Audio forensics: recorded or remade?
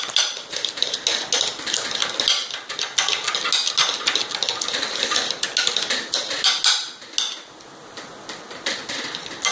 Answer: recorded